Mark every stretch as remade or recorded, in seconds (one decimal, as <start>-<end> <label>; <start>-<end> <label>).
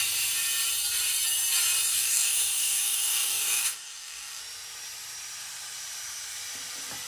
0.0-1.9 recorded; 1.9-4.4 remade; 4.4-7.1 recorded